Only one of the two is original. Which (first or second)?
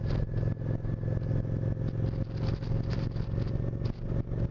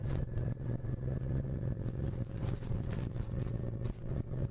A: first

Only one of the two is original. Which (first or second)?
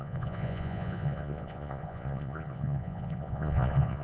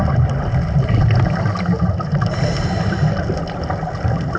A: second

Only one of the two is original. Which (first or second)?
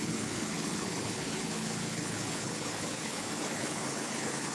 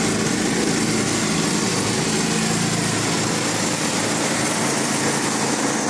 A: second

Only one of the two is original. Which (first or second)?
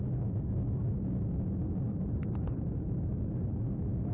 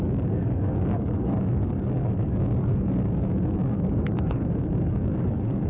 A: first